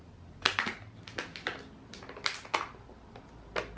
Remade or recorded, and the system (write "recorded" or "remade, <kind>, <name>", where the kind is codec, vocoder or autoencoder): recorded